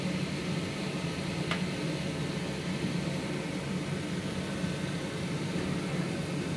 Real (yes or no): yes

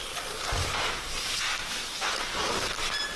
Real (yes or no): yes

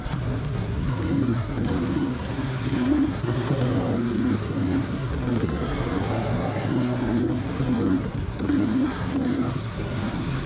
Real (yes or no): no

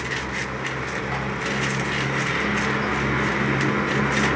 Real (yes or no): yes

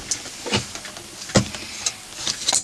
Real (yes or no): yes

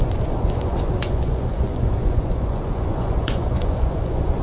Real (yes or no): no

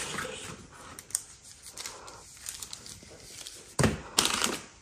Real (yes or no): no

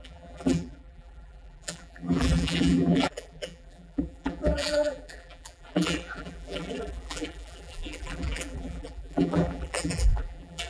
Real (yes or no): no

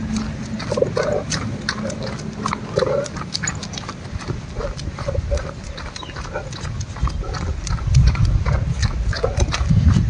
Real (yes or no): yes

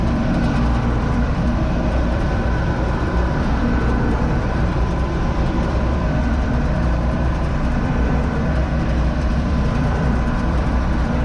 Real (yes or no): no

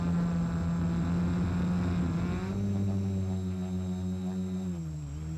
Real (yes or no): yes